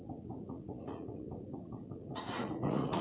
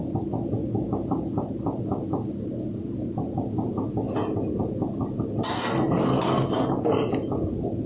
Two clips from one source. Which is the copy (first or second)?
first